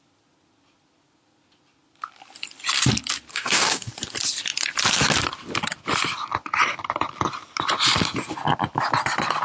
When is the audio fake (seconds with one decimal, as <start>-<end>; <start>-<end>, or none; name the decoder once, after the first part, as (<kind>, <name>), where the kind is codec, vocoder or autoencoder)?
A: 3.3-3.9 (codec, DAC)